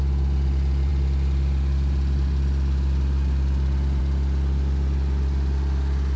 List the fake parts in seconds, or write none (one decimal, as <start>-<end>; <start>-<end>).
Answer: none